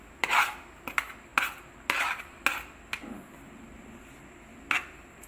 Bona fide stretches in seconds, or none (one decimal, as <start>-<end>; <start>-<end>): 0.0-5.3